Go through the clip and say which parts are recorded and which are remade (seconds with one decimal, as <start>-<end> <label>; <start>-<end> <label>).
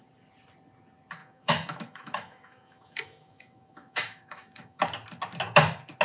0.0-1.2 recorded; 1.2-4.8 remade; 4.8-6.0 recorded